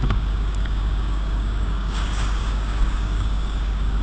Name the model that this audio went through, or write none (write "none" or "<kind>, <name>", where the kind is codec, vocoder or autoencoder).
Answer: codec, DAC